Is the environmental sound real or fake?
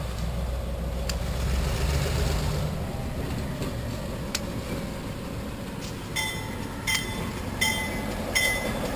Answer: real